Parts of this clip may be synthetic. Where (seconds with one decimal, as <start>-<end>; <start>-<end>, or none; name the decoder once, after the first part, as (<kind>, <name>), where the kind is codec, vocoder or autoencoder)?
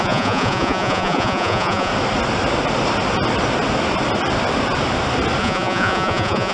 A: 0.0-1.9 (vocoder, Vocos); 5.4-6.5